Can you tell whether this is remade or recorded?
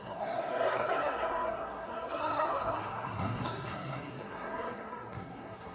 remade